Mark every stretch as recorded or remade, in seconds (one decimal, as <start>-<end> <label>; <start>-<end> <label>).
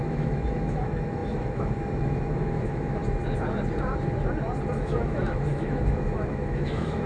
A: 0.0-3.0 remade; 3.0-4.7 recorded; 4.7-7.1 remade